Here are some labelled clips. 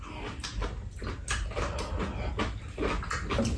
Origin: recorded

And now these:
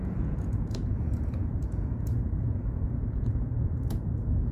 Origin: remade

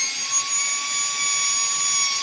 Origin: recorded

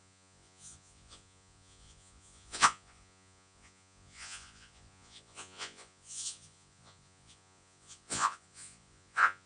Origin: remade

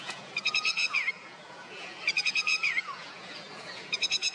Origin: remade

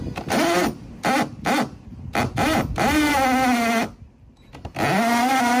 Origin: recorded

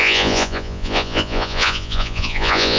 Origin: remade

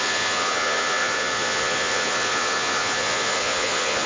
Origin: remade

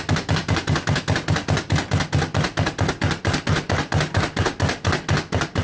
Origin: recorded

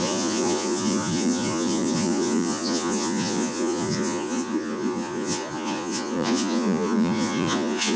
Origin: remade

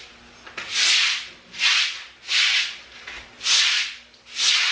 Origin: recorded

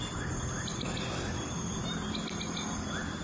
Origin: recorded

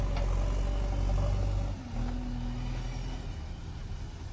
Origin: recorded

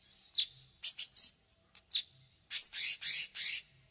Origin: recorded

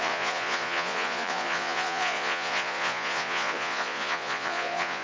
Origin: remade